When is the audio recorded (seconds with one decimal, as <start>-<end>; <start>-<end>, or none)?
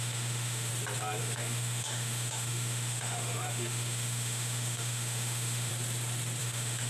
0.7-1.2; 5.7-6.4